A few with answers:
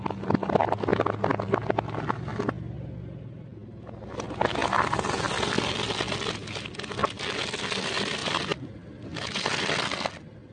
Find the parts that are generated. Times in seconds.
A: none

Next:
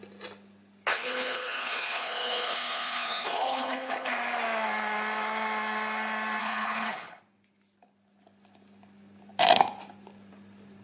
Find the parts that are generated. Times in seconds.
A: 0.9-4.1; 6.4-7.2

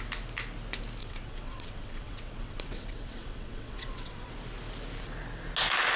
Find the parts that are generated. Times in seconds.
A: 1.0-4.3

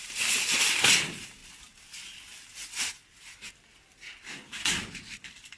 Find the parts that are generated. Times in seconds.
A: none

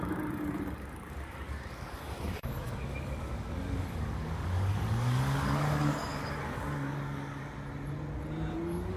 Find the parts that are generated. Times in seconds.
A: 0.0-7.4; 8.5-9.0

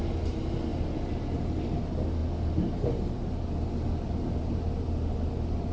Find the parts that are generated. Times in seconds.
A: none

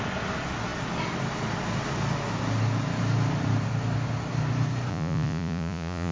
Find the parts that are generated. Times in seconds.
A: 4.9-6.1

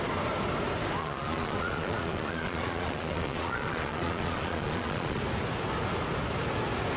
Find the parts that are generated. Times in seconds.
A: 1.0-5.2